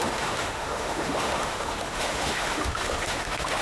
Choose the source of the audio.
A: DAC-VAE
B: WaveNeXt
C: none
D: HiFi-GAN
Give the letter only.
A